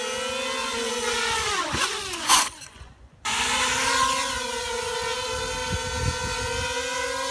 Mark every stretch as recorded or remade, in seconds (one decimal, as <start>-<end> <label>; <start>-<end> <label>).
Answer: 0.0-0.6 recorded; 0.6-3.6 remade; 3.6-7.3 recorded